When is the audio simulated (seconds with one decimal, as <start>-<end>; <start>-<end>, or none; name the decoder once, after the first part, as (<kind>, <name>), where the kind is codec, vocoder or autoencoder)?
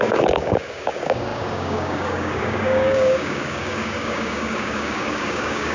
0.0-5.7 (codec, DAC)